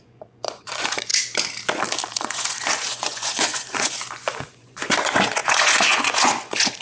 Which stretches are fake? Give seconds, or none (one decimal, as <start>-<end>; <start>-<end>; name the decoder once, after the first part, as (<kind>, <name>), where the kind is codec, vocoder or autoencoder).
0.0-1.1 (vocoder, Vocos); 2.1-6.8